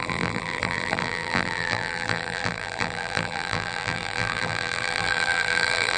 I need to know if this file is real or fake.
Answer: fake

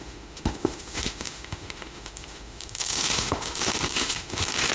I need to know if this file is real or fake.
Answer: fake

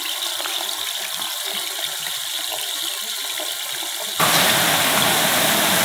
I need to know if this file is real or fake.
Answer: fake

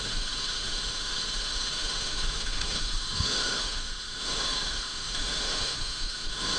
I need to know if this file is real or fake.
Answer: fake